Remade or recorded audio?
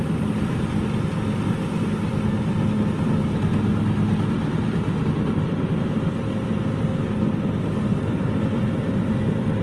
recorded